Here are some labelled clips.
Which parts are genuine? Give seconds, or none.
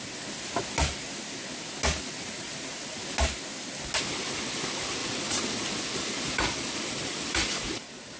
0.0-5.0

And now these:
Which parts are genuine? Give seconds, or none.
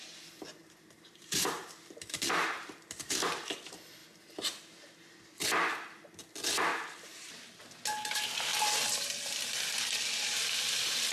0.0-0.6; 3.5-6.7; 7.6-8.5; 9.1-11.1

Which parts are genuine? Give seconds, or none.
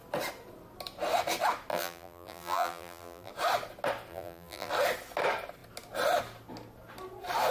0.0-1.7; 3.3-4.1; 4.7-7.5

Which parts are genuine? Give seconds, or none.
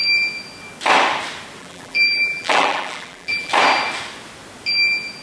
0.0-1.6; 3.5-5.2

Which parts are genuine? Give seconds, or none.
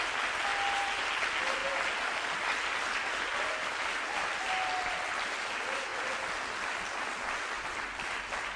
0.0-8.6